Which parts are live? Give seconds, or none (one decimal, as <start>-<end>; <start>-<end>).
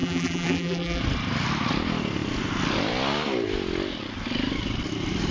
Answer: 1.0-5.3